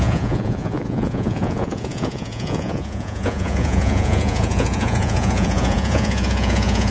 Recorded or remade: remade